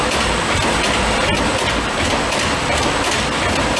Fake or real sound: real